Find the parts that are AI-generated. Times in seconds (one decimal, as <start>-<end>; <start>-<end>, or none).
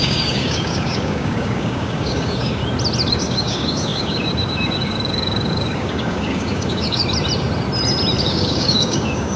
0.0-2.6; 3.1-7.0; 8.2-9.4